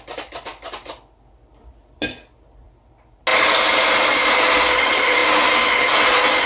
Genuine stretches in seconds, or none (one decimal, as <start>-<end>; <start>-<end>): 0.0-0.5; 2.3-6.5